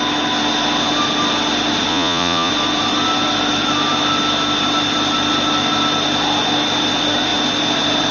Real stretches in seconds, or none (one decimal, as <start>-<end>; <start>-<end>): 0.0-1.9; 2.5-8.1